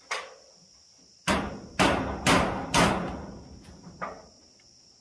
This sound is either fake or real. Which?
real